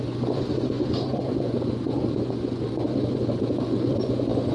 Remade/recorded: remade